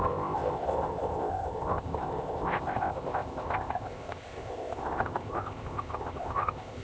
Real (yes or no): no